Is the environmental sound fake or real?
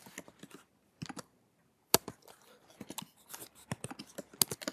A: real